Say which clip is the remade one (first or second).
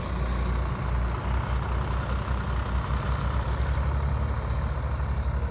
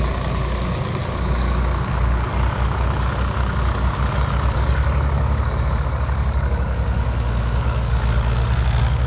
second